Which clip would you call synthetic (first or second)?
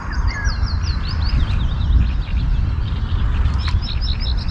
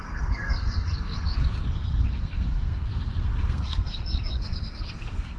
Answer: second